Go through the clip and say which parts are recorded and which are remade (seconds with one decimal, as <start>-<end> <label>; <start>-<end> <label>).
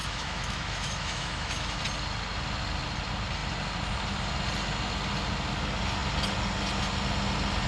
0.0-1.8 remade; 1.8-7.7 recorded